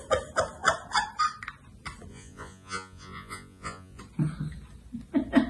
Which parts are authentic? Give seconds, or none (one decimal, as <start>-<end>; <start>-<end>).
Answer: 0.0-2.1; 4.0-5.5